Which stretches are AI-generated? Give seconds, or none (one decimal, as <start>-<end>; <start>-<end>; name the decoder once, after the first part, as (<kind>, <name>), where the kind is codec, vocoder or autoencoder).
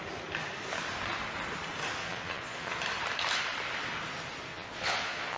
2.0-2.8 (vocoder, Vocos); 4.5-5.4